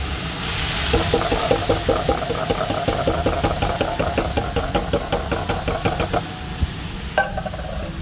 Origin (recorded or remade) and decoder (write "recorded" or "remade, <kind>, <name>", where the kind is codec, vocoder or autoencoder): recorded